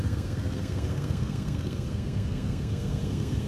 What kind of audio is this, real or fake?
fake